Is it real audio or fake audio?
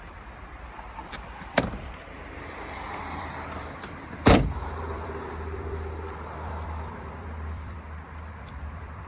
fake